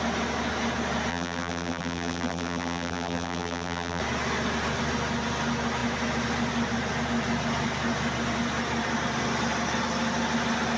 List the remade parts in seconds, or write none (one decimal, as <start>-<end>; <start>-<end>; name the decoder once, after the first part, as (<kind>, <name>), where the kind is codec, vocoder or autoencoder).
1.1-4.0 (vocoder, BigVGAN v2)